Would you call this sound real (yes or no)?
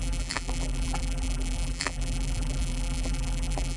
no